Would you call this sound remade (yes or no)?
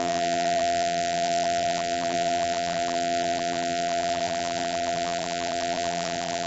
yes